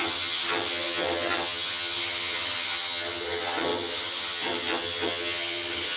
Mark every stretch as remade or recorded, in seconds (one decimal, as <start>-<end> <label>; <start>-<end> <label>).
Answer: 0.0-6.0 remade